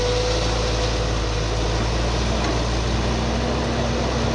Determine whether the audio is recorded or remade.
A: recorded